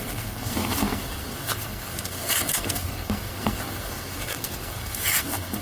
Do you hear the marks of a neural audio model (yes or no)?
yes